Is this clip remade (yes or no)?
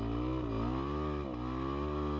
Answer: no